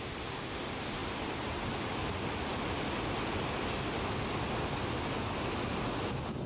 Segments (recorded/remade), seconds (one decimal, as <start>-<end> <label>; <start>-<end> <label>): 0.0-6.5 recorded